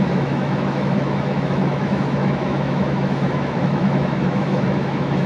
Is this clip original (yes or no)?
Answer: no